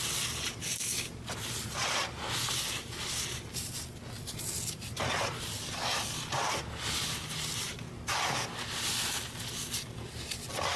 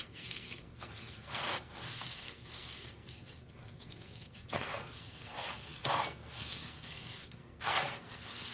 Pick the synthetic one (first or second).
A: second